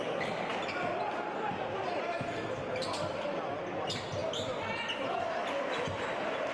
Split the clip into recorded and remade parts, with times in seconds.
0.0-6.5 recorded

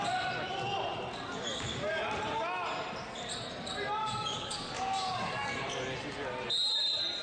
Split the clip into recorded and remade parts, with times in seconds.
0.0-4.0 recorded; 4.0-5.6 remade; 5.6-7.2 recorded

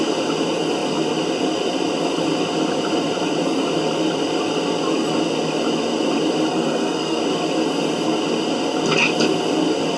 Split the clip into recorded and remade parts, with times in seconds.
0.0-6.5 recorded; 6.5-7.2 remade; 7.2-10.0 recorded

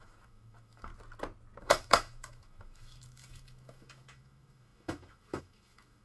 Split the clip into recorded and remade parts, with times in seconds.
0.0-0.9 remade; 0.9-1.6 recorded; 1.6-6.0 remade